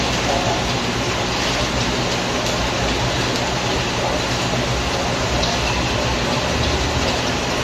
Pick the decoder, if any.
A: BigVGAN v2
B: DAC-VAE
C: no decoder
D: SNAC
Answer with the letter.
C